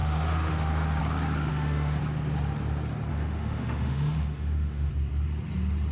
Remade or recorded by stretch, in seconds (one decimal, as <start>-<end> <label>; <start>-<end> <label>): 0.0-1.0 remade; 1.0-1.5 recorded; 1.5-2.0 remade; 2.0-3.1 recorded; 3.1-4.9 remade; 4.9-5.9 recorded